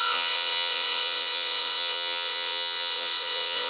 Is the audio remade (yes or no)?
yes